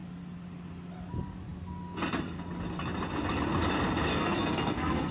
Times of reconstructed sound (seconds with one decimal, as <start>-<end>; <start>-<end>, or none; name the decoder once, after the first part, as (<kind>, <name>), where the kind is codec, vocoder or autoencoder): 4.1-5.1 (codec, SNAC)